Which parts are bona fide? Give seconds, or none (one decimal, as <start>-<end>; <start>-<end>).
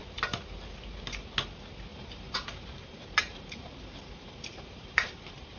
0.0-1.9